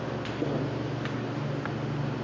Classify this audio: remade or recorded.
recorded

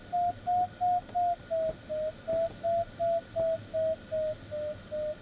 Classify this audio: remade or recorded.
recorded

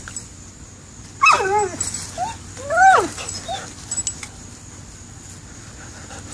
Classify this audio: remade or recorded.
recorded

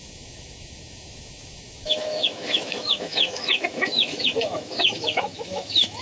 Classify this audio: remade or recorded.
remade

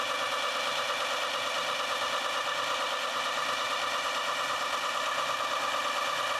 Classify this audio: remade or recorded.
recorded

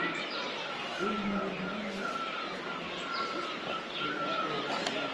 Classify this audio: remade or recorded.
recorded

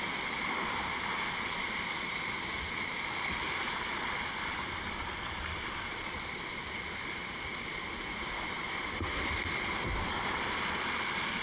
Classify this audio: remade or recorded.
recorded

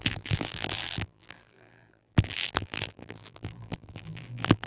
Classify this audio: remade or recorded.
remade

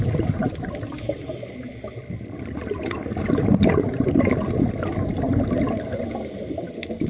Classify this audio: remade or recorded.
recorded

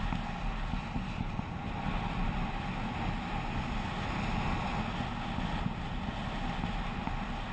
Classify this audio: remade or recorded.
recorded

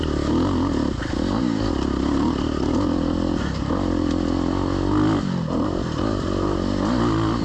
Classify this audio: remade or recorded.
recorded